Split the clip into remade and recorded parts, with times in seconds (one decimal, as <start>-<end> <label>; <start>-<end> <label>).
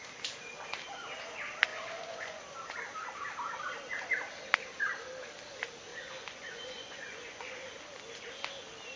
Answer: 0.0-1.7 recorded; 1.7-2.4 remade; 2.4-5.9 recorded; 5.9-7.9 remade; 7.9-9.0 recorded